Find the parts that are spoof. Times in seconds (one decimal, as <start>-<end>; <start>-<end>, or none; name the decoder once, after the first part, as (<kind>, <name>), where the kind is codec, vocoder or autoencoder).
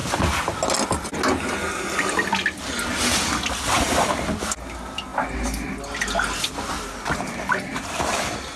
none